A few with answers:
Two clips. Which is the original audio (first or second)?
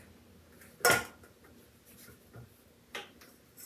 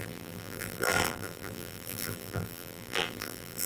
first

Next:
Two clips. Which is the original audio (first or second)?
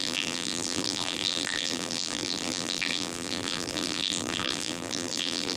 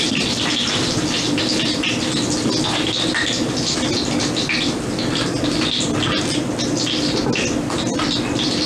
second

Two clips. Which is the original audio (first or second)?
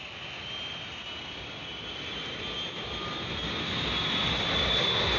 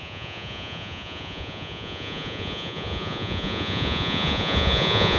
first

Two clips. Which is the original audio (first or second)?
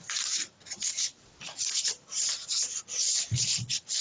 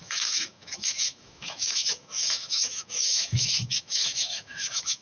first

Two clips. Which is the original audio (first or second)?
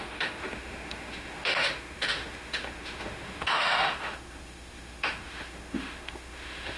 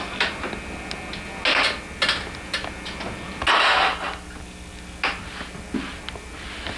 second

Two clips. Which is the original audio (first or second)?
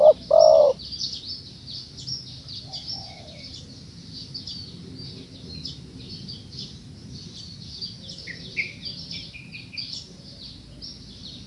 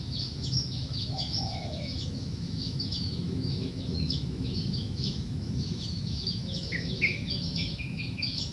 first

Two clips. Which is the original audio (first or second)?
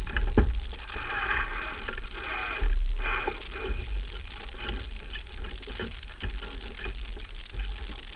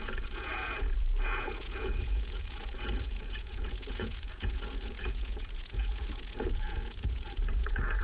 first